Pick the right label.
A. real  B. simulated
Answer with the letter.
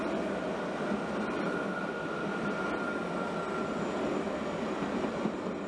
A